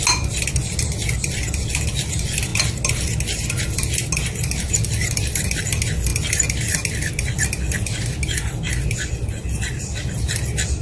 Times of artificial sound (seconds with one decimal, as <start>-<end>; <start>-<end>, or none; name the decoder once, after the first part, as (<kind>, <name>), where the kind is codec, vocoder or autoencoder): none